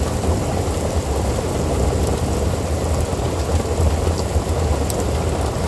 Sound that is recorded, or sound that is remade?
recorded